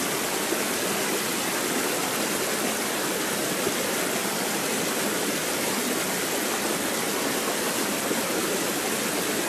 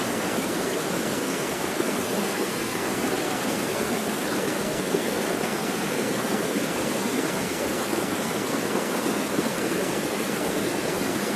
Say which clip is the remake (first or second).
second